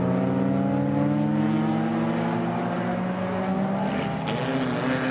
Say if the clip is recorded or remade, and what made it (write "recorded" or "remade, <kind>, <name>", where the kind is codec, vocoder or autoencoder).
recorded